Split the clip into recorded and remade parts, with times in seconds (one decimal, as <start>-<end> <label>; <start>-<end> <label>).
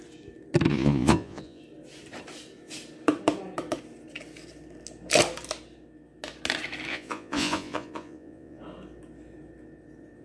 0.0-0.7 recorded; 0.7-1.6 remade; 1.6-6.9 recorded; 6.9-8.6 remade; 8.6-10.2 recorded